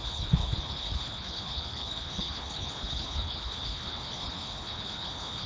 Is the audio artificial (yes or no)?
yes